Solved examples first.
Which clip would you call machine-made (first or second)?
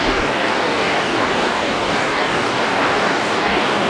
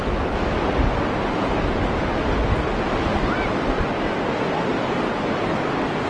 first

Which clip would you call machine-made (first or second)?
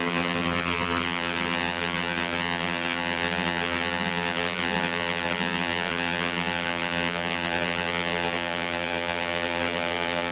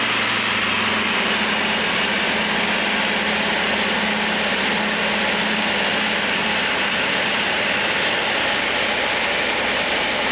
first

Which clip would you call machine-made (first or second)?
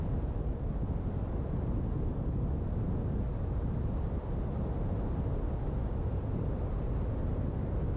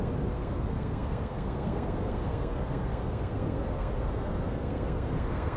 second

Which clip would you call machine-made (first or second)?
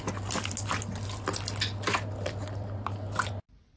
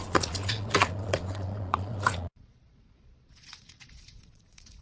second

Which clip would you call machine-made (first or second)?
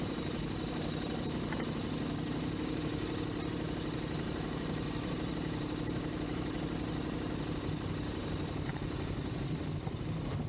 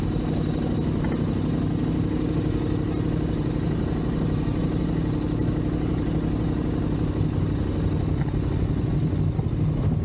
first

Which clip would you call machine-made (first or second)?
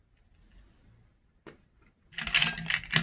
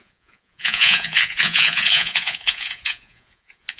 second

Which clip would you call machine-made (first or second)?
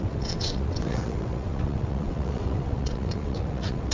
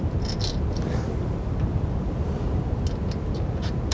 first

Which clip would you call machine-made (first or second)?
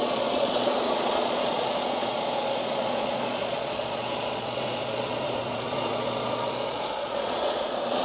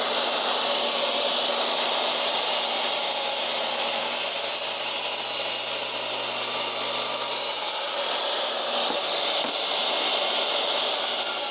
first